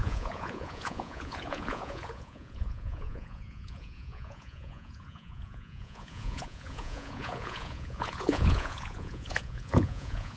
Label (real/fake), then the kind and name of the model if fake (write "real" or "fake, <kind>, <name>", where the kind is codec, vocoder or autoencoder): fake, vocoder, Vocos